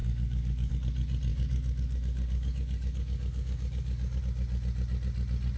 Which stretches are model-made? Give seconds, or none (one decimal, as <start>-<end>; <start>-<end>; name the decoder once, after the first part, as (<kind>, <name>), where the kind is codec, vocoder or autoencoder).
0.0-0.7 (codec, DAC); 1.3-4.2